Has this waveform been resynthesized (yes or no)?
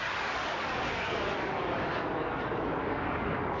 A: yes